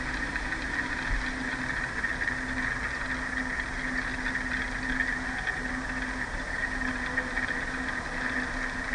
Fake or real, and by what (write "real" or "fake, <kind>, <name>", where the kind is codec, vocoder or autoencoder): real